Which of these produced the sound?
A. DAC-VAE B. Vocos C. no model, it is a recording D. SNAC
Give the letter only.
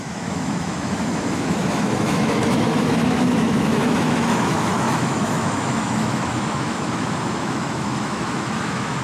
A